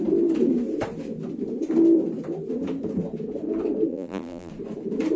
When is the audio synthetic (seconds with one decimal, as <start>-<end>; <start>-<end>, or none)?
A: 3.9-4.5